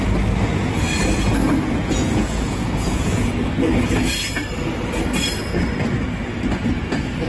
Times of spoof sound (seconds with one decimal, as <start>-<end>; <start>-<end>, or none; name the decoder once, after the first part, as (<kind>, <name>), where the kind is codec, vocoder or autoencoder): 1.8-3.3 (vocoder, Vocos)